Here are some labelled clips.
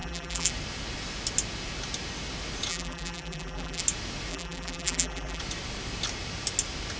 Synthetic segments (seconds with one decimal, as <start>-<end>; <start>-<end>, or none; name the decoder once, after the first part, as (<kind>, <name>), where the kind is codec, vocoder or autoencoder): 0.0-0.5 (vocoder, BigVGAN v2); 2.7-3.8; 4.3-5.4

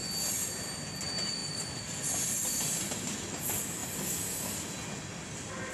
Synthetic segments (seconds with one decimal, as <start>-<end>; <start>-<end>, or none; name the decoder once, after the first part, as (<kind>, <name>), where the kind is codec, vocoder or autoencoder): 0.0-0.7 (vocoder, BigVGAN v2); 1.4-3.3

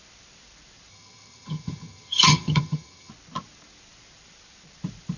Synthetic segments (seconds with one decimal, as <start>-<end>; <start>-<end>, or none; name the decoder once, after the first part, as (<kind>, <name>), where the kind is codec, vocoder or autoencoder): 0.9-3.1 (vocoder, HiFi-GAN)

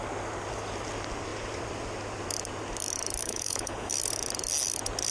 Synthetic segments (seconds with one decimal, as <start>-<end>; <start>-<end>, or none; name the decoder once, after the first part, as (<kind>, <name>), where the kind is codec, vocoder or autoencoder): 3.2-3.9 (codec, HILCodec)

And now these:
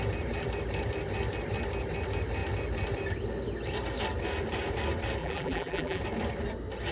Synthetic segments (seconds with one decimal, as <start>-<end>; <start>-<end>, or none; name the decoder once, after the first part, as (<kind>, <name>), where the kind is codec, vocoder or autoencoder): 5.2-6.0 (vocoder, BigVGAN v2)